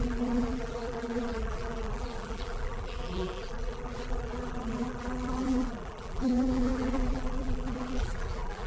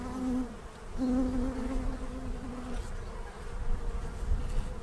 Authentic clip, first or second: second